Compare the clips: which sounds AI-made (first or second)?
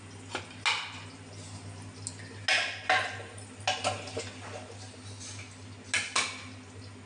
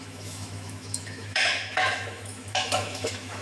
second